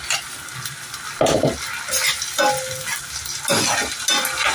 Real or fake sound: real